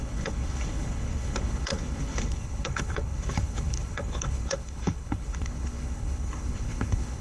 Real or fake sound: fake